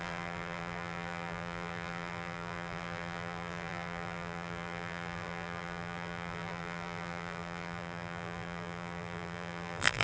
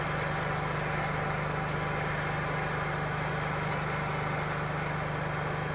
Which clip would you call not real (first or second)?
first